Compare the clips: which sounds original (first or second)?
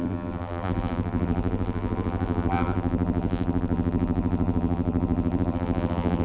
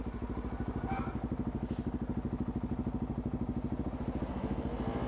second